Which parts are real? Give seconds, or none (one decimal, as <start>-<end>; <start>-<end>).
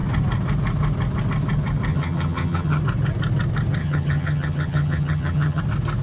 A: 0.0-1.9; 2.8-3.8; 5.6-6.0